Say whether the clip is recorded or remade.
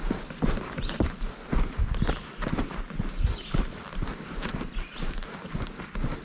recorded